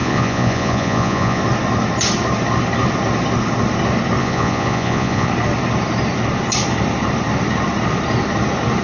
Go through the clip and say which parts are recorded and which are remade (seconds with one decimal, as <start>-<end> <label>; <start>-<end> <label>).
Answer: 0.0-1.4 remade; 1.4-4.2 recorded; 4.2-5.3 remade; 5.3-8.8 recorded